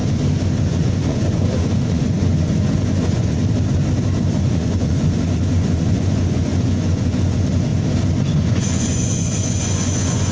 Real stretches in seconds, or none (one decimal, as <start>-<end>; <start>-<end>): 0.0-0.7; 3.4-4.4; 7.7-8.2